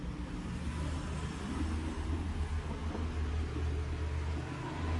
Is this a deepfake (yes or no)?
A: no